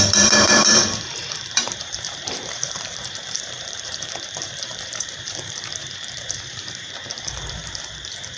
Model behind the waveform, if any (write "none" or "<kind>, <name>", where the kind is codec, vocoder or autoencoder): vocoder, BigVGAN v2